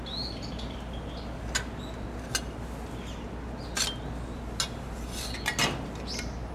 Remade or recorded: recorded